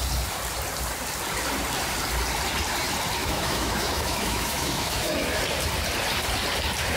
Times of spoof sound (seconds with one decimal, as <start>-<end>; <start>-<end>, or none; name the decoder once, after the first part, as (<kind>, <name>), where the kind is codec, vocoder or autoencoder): 3.2-5.4 (autoencoder, DAC-VAE)